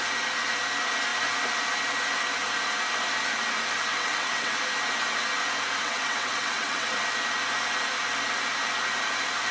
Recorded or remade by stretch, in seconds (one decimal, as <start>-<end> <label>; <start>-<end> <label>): 0.0-3.9 recorded; 3.9-4.6 remade; 4.6-5.8 recorded; 5.8-6.9 remade; 6.9-9.5 recorded